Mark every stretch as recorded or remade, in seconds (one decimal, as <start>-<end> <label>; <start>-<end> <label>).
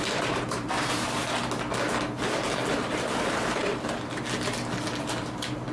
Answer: 0.0-1.2 remade; 1.2-2.7 recorded; 2.7-3.7 remade; 3.7-5.0 recorded; 5.0-5.7 remade